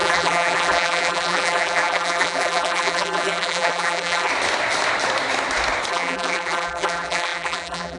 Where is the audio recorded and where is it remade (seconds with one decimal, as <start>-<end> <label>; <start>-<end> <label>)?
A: 0.0-4.3 remade; 4.3-5.9 recorded; 5.9-8.0 remade